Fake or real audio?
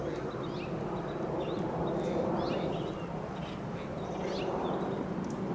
real